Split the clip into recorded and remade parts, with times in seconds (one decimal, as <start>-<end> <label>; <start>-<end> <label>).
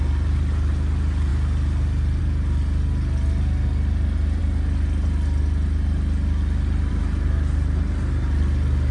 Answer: 0.0-8.9 recorded